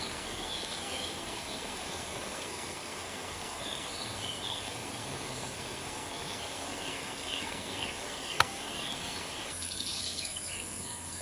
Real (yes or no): no